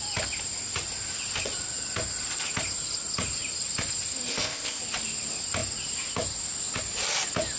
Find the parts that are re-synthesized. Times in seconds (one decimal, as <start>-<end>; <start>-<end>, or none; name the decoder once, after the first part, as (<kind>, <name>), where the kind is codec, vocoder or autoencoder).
4.3-4.8 (codec, ZipCodec)